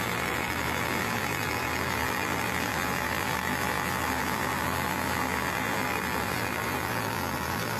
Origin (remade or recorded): remade